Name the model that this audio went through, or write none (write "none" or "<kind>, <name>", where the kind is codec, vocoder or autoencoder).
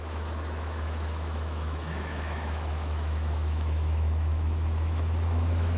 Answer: autoencoder, DAC-VAE